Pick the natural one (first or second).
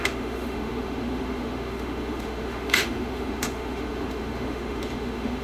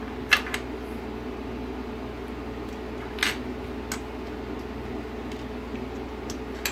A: second